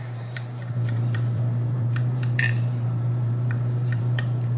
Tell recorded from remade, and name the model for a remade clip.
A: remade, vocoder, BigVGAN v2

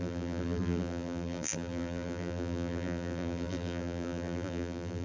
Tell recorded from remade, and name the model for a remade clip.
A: remade, vocoder, BigVGAN v2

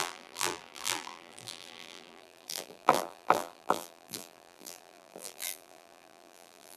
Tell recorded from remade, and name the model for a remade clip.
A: remade, vocoder, BigVGAN v2